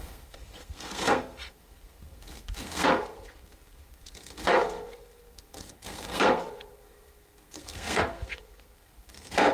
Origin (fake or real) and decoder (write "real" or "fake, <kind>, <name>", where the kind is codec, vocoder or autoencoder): fake, codec, SNAC